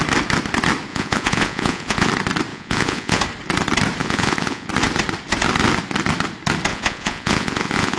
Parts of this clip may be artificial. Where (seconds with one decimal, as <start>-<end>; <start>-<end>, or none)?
0.9-2.1; 2.5-3.2; 4.0-4.7; 6.7-8.0